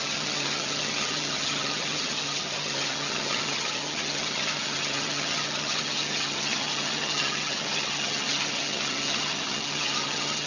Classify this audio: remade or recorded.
remade